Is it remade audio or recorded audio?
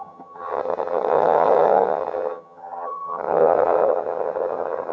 remade